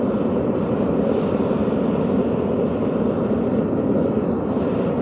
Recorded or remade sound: recorded